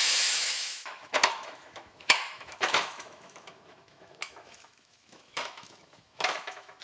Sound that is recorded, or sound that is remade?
remade